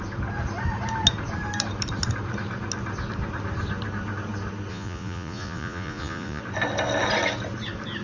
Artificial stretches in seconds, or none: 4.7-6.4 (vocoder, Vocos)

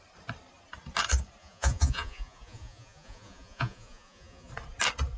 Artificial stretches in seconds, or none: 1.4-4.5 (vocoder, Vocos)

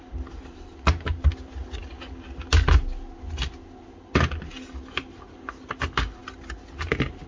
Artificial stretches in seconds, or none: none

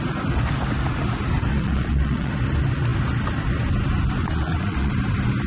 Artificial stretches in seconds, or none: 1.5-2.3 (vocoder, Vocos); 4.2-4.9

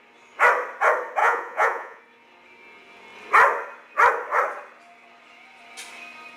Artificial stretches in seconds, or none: 1.2-2.0 (vocoder, Vocos)

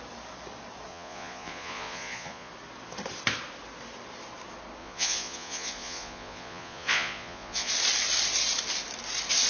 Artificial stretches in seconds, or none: 0.9-2.5 (vocoder, Vocos); 4.8-7.7

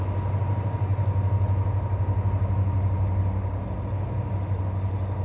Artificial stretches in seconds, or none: none

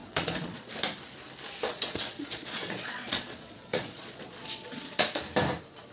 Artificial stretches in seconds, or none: 0.0-0.7 (vocoder, Vocos); 1.7-5.2